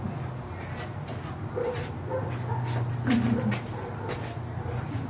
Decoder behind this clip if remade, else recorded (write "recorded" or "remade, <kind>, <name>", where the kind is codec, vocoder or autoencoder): recorded